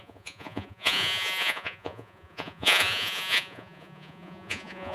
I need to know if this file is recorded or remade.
remade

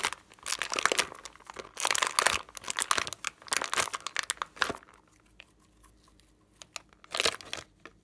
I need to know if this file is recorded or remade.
recorded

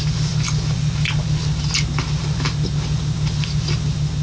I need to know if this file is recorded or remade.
recorded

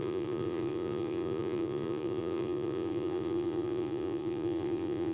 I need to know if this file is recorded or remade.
remade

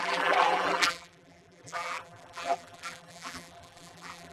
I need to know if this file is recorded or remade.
remade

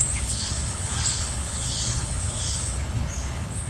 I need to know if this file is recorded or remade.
remade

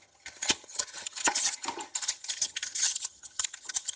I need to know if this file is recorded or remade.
remade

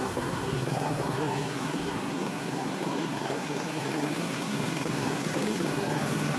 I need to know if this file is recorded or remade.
remade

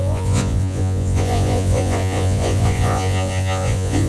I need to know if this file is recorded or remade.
remade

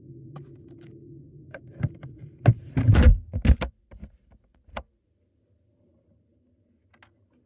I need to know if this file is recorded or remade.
recorded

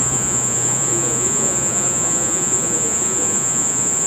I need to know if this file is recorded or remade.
remade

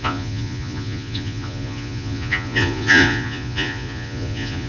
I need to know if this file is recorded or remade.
remade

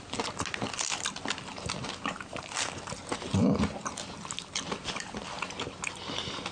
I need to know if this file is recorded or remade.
recorded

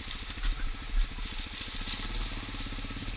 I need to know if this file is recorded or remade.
recorded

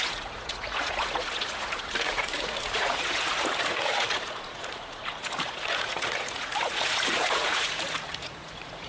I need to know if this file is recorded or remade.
remade